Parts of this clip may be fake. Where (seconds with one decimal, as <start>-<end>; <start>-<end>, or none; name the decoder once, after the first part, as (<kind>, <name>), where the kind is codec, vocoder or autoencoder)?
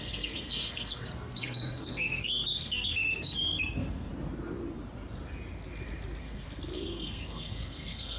0.0-4.1 (codec, SNAC); 6.2-8.2